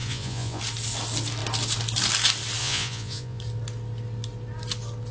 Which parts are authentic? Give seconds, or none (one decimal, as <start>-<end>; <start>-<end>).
0.6-2.6; 3.4-5.1